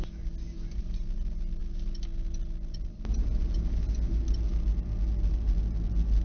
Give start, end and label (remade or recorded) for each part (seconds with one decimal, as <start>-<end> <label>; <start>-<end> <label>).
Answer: 0.0-6.2 recorded

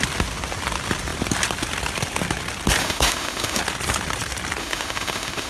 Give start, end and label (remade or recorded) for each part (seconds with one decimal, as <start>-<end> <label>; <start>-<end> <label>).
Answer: 0.0-2.8 recorded; 2.8-3.6 remade; 3.6-4.6 recorded; 4.6-5.5 remade

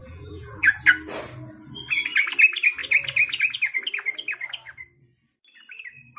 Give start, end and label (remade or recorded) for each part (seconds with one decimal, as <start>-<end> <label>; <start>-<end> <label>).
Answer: 0.0-0.8 remade; 0.8-6.2 recorded

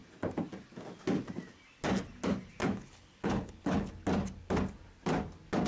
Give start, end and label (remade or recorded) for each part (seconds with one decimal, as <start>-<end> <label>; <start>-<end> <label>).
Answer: 0.0-2.6 recorded; 2.6-3.8 remade; 3.8-5.7 recorded

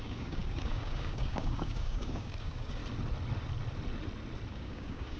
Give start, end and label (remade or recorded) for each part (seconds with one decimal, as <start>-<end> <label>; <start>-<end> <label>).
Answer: 0.0-2.8 remade; 2.8-4.5 recorded; 4.5-5.2 remade

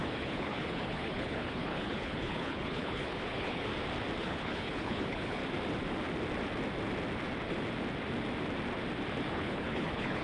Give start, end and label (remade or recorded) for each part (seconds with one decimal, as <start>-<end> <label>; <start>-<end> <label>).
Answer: 0.0-3.7 remade; 3.7-4.2 recorded; 4.2-5.4 remade; 5.4-9.3 recorded; 9.3-10.2 remade